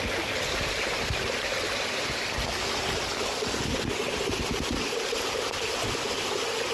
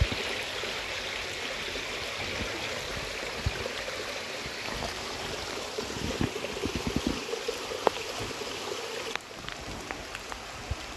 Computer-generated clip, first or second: second